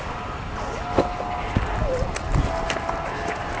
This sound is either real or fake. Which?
real